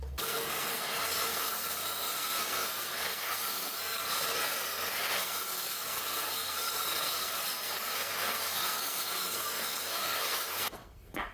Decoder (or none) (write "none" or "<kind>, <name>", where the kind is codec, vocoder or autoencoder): codec, SNAC